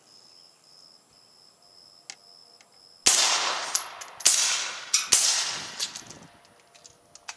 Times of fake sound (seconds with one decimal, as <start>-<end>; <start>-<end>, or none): none